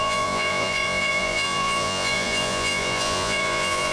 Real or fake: fake